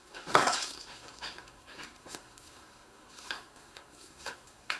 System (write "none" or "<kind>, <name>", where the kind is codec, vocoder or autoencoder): codec, SNAC